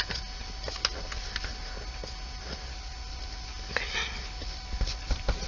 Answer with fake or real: real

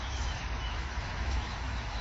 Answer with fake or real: fake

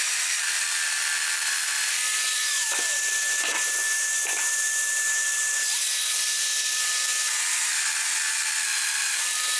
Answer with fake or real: fake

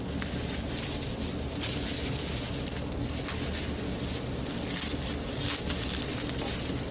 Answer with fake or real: real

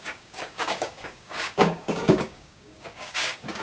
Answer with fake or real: fake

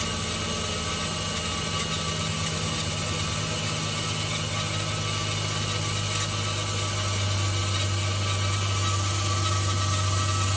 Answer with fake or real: real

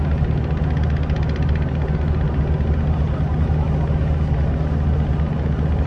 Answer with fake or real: real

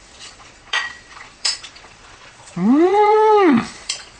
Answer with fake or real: fake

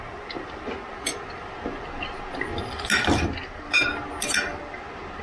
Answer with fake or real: real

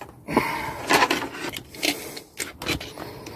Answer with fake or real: real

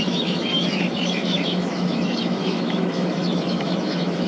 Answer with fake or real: fake